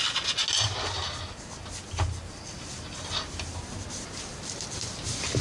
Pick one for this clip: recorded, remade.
recorded